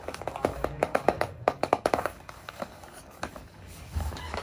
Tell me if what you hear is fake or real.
fake